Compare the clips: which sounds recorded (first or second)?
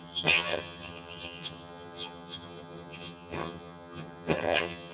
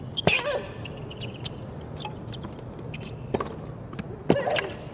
second